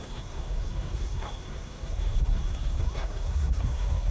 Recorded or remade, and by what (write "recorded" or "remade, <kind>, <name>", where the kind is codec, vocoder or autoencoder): remade, codec, SNAC